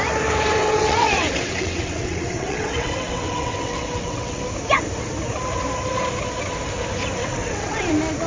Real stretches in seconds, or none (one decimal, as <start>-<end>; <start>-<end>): 0.0-0.6; 4.4-7.2; 7.9-8.3